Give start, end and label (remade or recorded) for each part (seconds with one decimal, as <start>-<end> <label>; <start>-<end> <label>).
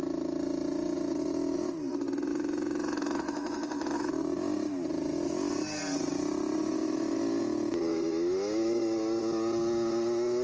0.0-2.3 recorded; 2.3-4.1 remade; 4.1-6.6 recorded; 6.6-7.2 remade; 7.2-7.9 recorded; 7.9-9.2 remade; 9.2-10.4 recorded